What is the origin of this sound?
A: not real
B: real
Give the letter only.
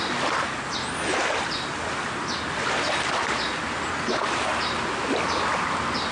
B